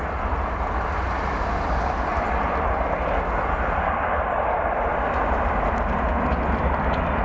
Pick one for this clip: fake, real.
real